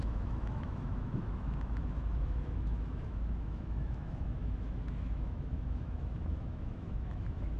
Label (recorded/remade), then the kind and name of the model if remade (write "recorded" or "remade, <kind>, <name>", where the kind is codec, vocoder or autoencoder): remade, autoencoder, DAC-VAE